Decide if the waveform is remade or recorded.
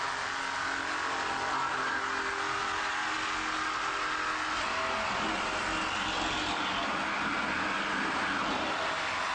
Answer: recorded